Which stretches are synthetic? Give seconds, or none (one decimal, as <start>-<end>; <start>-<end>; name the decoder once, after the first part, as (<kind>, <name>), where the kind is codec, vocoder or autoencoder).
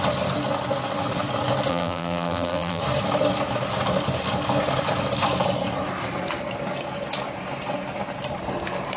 1.7-2.8 (vocoder, BigVGAN v2)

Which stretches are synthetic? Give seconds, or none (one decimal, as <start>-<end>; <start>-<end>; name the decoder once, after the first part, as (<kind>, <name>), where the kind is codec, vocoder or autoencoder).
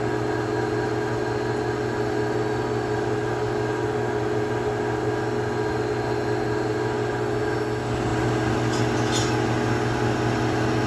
none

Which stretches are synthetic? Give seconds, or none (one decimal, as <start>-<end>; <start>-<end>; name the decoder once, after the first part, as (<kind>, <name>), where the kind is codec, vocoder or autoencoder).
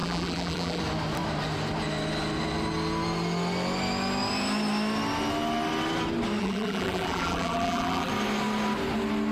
0.0-0.8 (vocoder, BigVGAN v2); 6.4-8.1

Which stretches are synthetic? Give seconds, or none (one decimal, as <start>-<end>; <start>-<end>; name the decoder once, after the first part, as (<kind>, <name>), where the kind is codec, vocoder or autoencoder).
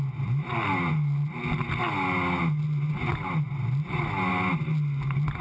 none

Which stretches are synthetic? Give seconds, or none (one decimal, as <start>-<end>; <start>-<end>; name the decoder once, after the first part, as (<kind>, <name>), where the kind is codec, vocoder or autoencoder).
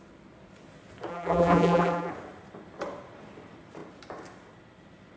1.1-2.1 (vocoder, BigVGAN v2)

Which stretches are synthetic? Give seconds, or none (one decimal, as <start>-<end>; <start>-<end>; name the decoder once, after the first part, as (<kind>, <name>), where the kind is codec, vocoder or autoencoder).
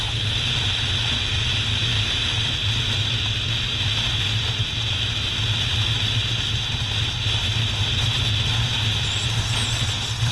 none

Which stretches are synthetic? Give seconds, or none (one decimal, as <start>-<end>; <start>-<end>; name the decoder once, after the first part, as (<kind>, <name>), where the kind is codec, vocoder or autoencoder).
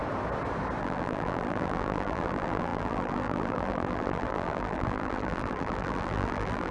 0.8-6.7 (vocoder, BigVGAN v2)